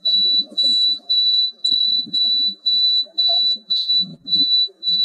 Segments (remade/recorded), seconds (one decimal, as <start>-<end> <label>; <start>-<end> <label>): 0.0-1.6 remade; 1.6-2.1 recorded; 2.1-5.0 remade